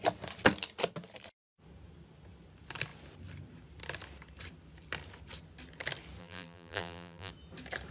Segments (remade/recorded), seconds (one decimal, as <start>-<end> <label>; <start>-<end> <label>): 0.0-6.2 recorded; 6.2-7.3 remade; 7.3-7.9 recorded